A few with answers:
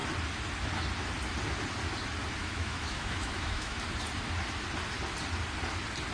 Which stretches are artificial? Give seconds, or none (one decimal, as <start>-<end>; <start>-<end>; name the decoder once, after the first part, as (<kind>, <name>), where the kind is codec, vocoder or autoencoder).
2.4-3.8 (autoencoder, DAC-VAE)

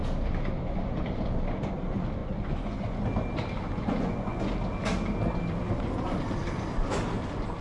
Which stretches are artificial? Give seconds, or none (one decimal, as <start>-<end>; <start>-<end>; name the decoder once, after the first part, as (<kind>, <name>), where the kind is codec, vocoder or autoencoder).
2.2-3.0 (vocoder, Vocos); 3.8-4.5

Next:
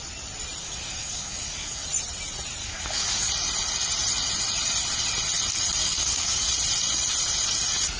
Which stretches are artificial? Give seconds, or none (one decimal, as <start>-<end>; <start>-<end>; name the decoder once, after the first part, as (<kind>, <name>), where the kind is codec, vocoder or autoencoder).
0.6-1.9 (codec, DAC); 2.6-3.3; 5.8-6.5

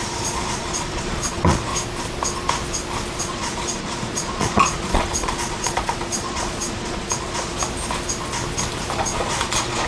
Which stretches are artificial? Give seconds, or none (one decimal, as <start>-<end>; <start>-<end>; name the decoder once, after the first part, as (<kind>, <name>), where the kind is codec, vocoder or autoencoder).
0.0-1.7 (vocoder, Vocos); 3.2-7.6; 9.0-9.9

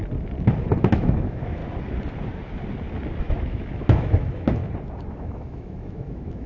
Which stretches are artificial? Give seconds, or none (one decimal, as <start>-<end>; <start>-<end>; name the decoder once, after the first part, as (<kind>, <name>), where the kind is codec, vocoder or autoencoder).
0.8-1.6 (autoencoder, DAC-VAE); 3.2-4.6; 5.1-6.5

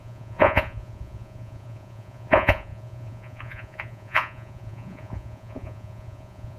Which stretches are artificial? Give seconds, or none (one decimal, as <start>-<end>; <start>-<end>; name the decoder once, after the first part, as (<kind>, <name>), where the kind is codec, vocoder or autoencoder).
0.0-6.6 (vocoder, Vocos)

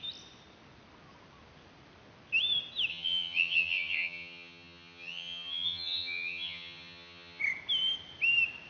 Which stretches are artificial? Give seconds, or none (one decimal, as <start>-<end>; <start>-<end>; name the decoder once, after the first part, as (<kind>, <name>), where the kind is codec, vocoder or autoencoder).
2.9-7.4 (vocoder, HiFi-GAN)

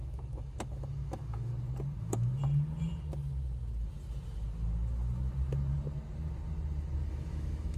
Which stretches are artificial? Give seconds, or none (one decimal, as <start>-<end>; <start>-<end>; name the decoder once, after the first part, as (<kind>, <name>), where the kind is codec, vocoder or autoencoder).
0.0-1.5 (autoencoder, DAC-VAE); 2.0-2.4; 7.1-7.8